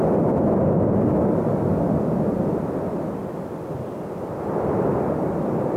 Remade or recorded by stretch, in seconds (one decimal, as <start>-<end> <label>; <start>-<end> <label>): 0.0-5.8 recorded